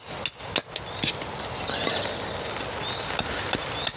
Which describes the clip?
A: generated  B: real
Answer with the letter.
B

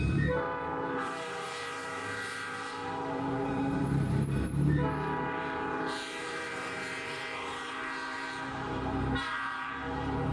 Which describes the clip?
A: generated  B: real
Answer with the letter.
A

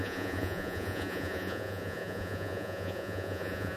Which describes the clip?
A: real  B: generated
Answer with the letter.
B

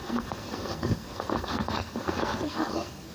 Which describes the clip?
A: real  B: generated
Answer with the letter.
B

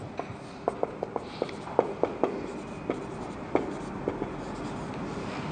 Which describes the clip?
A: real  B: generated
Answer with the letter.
A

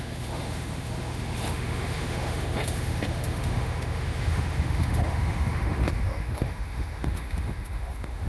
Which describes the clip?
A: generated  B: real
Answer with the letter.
A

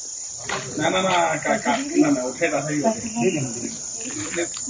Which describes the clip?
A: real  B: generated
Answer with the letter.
A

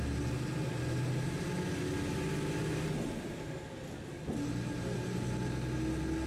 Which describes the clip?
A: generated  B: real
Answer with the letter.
B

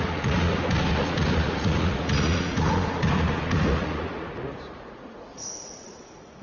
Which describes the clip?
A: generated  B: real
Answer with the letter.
A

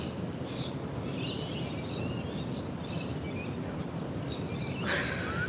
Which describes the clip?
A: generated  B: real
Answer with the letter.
B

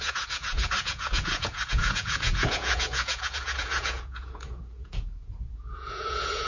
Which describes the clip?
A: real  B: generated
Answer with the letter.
B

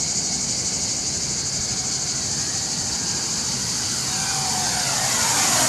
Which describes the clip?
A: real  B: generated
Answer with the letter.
A